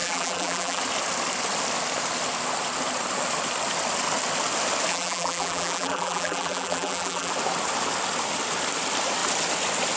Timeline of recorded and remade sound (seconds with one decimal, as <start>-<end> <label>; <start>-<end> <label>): 0.0-0.8 remade; 0.8-4.9 recorded; 4.9-7.3 remade; 7.3-10.0 recorded